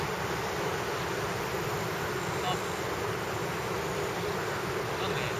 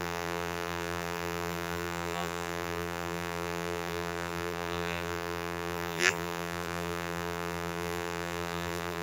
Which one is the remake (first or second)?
second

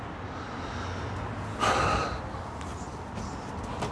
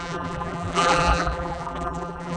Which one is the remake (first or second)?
second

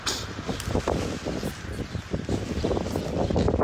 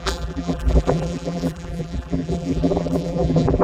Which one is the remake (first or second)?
second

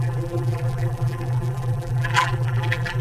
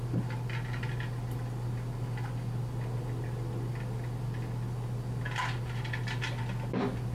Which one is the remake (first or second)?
first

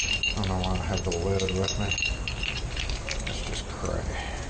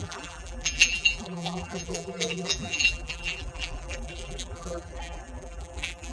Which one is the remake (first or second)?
second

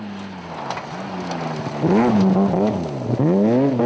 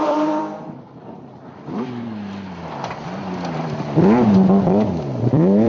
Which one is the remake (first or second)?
second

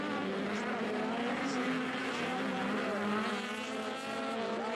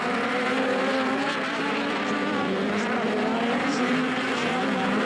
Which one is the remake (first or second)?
second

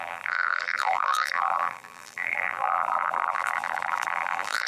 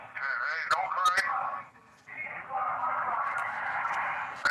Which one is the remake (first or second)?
first